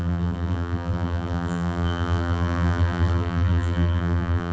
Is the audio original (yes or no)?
no